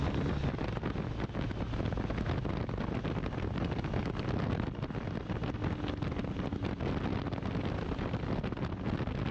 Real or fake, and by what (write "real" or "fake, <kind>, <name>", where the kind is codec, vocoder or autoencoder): real